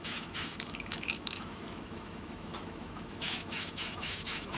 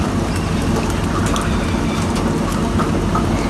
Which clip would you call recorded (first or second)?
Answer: second